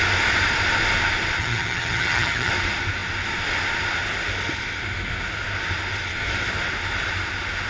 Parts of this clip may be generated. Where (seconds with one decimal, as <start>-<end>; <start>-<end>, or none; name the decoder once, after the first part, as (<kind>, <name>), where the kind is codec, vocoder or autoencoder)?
1.4-2.5 (vocoder, HiFi-GAN)